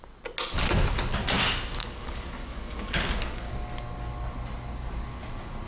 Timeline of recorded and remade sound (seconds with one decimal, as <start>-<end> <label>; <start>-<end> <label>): 0.0-1.8 recorded; 1.8-3.5 remade; 3.5-5.7 recorded